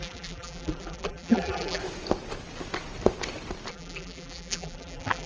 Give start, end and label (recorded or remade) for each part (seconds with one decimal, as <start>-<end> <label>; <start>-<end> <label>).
0.0-1.8 remade; 1.8-3.7 recorded; 3.7-5.3 remade